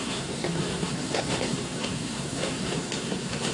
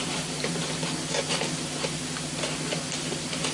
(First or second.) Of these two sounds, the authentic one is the second